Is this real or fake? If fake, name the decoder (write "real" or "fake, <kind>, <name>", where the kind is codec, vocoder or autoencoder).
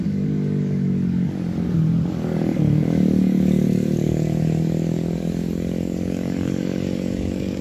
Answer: fake, codec, DAC